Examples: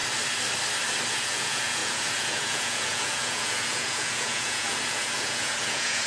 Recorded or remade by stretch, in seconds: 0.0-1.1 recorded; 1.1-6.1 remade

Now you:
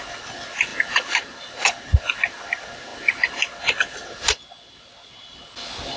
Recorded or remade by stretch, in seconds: 0.0-6.0 recorded

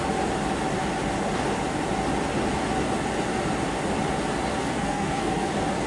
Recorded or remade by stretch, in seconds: 0.0-4.6 recorded; 4.6-5.5 remade; 5.5-5.9 recorded

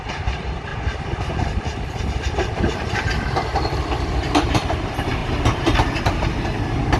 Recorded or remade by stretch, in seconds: 0.0-0.7 remade; 0.7-3.0 recorded; 3.0-5.2 remade; 5.2-6.0 recorded; 6.0-7.0 remade

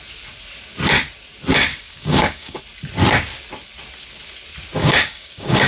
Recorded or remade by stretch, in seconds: 0.0-1.7 recorded; 1.7-2.6 remade; 2.6-4.8 recorded; 4.8-5.7 remade

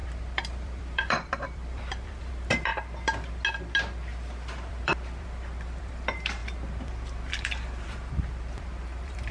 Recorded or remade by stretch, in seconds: 0.0-2.7 remade; 2.7-4.7 recorded; 4.7-6.4 remade; 6.4-7.3 recorded; 7.3-9.3 remade